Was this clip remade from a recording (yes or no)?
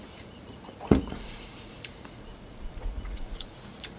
yes